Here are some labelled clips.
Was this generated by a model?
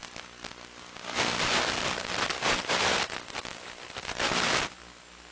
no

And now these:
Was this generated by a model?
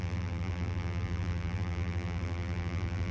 yes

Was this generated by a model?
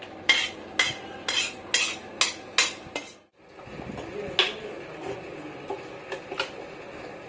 no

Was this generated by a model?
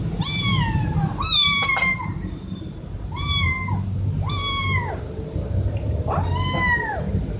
yes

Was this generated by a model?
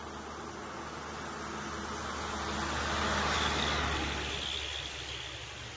no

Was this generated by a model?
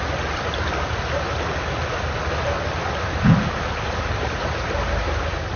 no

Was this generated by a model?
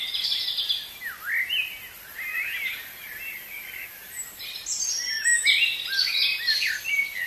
no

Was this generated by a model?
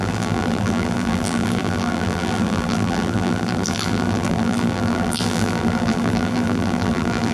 yes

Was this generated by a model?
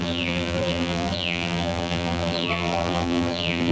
yes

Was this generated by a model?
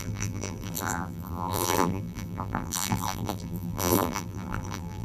yes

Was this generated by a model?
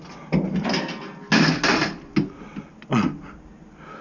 no